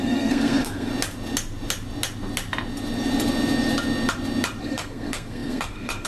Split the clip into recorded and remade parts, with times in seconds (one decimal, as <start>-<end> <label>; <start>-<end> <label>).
0.0-0.9 remade; 0.9-4.6 recorded; 4.6-6.1 remade